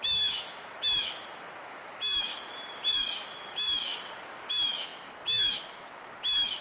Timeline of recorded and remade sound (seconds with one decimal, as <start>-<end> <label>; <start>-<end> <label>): 0.0-2.3 remade; 2.3-2.9 recorded; 2.9-3.9 remade; 3.9-4.5 recorded; 4.5-6.6 remade